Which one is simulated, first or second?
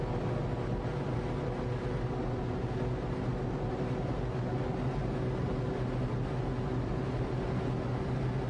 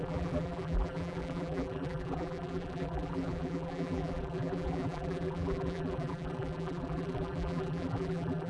second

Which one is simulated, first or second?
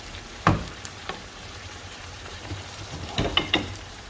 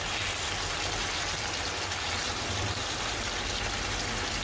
first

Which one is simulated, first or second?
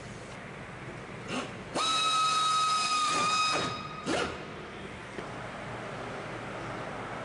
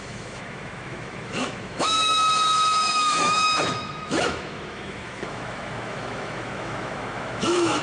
second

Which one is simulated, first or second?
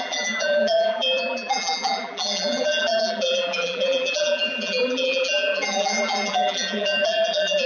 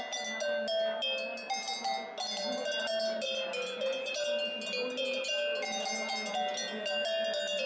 first